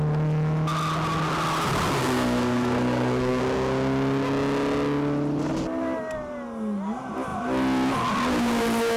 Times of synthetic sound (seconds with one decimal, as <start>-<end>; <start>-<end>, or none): 2.0-3.4